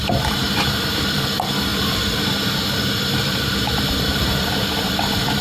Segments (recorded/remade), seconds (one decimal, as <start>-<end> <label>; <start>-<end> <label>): 0.0-5.4 remade